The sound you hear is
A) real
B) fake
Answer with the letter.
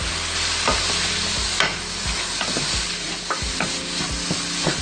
A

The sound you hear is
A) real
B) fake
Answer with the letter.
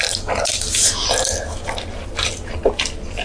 A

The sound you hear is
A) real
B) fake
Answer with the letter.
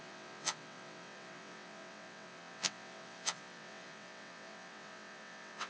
B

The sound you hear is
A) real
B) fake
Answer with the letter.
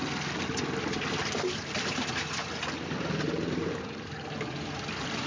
A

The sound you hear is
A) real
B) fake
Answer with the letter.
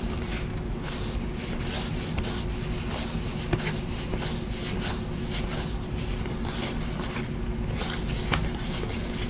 A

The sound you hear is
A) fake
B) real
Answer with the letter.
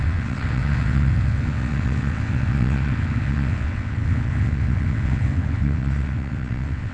A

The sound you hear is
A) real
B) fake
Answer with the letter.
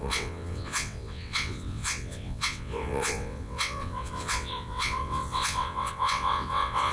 B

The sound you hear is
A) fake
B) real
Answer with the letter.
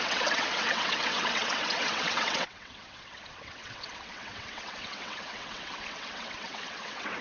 A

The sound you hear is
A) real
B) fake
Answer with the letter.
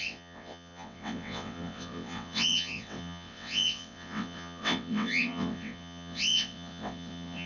B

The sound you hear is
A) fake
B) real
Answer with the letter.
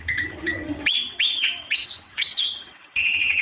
A